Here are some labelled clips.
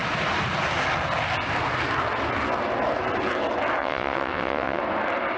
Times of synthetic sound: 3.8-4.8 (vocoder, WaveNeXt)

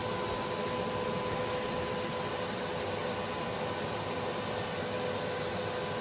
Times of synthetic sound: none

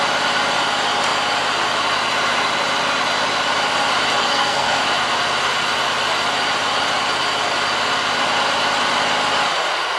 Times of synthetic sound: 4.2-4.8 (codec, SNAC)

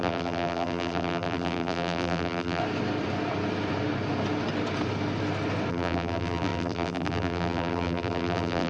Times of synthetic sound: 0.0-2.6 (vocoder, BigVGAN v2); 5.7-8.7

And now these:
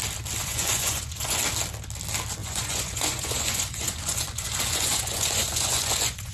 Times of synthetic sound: 0.4-1.4 (vocoder, Vocos); 2.4-6.3

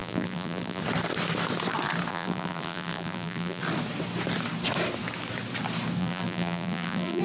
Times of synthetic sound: 0.0-0.8 (vocoder, BigVGAN v2); 2.1-3.6; 6.0-7.2

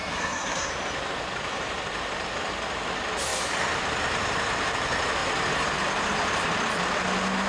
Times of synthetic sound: 0.0-0.7 (codec, SNAC)

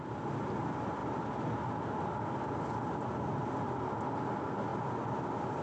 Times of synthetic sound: none